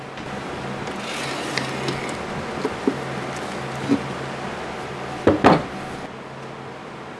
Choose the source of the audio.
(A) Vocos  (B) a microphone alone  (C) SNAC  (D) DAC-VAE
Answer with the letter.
B